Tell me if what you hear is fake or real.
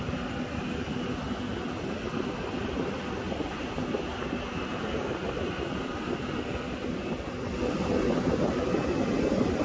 real